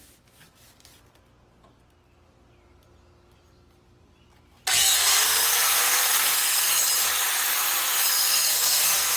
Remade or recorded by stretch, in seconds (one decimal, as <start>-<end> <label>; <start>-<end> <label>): 0.0-4.8 recorded; 4.8-6.7 remade; 6.7-8.1 recorded; 8.1-9.2 remade